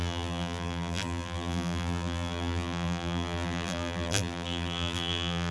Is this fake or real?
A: fake